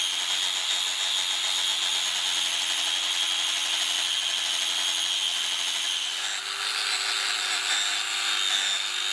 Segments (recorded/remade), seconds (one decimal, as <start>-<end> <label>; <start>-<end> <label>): 0.0-9.1 recorded